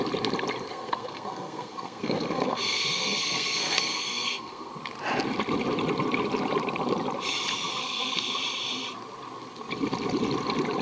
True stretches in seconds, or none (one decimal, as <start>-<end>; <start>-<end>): 0.0-0.7; 4.7-7.8; 8.3-10.8